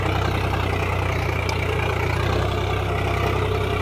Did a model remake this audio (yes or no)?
no